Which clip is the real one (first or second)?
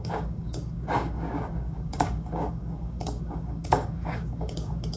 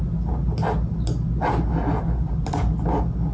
second